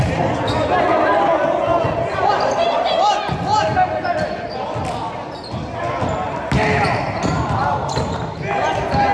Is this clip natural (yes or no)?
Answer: yes